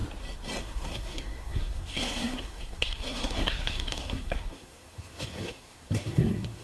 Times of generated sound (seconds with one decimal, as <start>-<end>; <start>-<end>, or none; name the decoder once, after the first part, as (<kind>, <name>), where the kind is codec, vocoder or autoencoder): 0.6-6.6 (codec, SNAC)